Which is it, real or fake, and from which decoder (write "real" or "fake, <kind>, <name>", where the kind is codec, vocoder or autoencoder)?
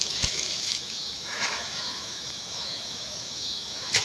fake, autoencoder, DAC-VAE